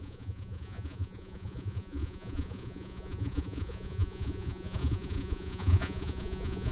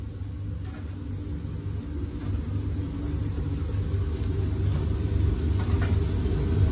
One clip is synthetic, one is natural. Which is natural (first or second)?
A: second